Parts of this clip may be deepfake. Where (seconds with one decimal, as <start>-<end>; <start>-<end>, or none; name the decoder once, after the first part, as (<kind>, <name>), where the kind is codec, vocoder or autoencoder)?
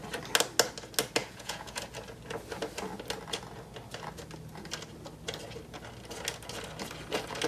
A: 1.2-1.8 (vocoder, Vocos)